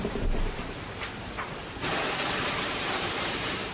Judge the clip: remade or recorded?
remade